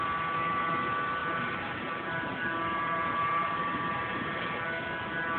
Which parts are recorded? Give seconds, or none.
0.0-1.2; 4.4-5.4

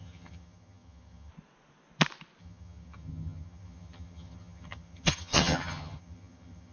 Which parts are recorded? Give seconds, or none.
1.3-2.4

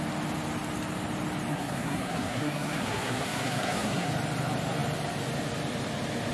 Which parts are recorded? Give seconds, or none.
0.0-1.5; 4.1-6.3

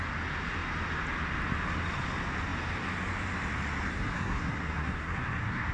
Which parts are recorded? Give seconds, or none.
0.0-3.9